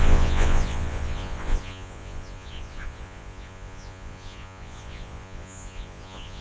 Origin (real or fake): fake